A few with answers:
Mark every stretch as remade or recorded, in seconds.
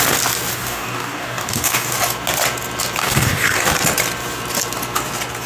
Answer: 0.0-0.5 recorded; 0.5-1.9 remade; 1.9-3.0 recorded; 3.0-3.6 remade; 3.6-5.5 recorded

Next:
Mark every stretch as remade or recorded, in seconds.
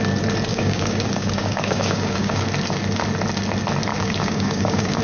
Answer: 0.0-0.5 recorded; 0.5-2.4 remade; 2.4-3.9 recorded; 3.9-5.0 remade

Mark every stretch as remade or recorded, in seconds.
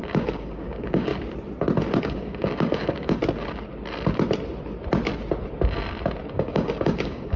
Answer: 0.0-1.1 remade; 1.1-2.0 recorded; 2.0-3.2 remade; 3.2-6.3 recorded; 6.3-7.4 remade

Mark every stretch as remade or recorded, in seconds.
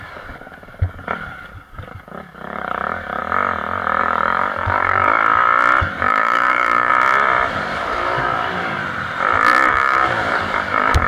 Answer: 0.0-3.2 remade; 3.2-4.0 recorded; 4.0-5.2 remade; 5.2-5.8 recorded; 5.8-6.9 remade; 6.9-7.5 recorded; 7.5-8.8 remade; 8.8-9.7 recorded; 9.7-11.1 remade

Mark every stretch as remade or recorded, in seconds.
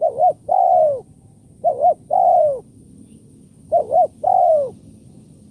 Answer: 0.0-0.7 remade; 0.7-2.4 recorded; 2.4-3.8 remade; 3.8-4.4 recorded; 4.4-5.5 remade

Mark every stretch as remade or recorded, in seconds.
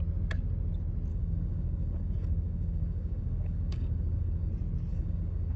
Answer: 0.0-1.1 recorded; 1.1-4.5 remade; 4.5-4.9 recorded; 4.9-5.6 remade